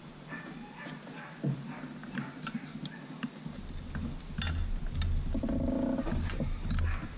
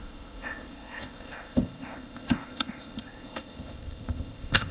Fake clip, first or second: second